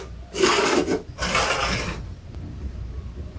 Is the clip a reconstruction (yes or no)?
no